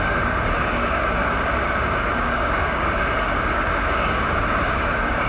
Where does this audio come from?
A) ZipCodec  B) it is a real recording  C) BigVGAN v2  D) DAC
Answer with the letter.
D